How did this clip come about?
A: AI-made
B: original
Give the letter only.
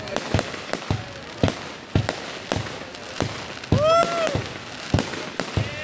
B